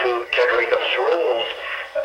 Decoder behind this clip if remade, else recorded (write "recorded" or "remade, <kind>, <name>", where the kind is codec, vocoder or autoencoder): remade, codec, SNAC